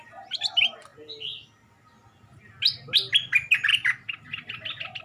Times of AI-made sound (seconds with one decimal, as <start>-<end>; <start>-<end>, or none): none